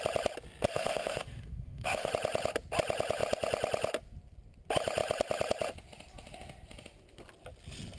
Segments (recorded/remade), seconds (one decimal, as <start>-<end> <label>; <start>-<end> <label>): 0.0-0.7 recorded; 0.7-2.1 remade; 2.1-8.0 recorded